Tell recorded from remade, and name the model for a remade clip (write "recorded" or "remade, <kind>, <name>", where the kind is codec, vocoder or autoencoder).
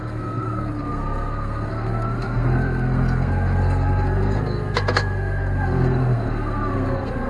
remade, codec, SNAC